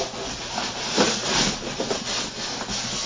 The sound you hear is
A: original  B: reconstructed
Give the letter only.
A